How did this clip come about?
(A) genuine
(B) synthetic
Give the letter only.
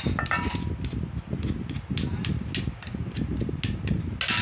A